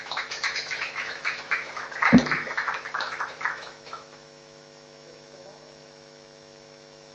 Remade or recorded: remade